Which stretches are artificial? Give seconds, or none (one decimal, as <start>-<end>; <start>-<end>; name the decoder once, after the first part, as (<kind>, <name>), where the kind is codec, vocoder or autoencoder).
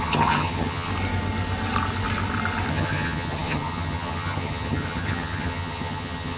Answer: 0.0-0.9 (vocoder, HiFi-GAN); 2.7-6.4